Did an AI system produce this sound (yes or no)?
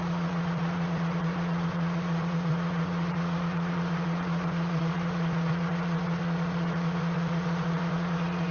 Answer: yes